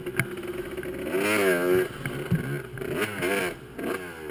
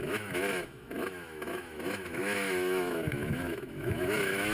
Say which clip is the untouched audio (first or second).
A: first